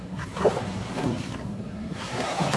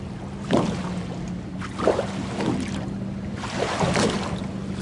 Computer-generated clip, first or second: first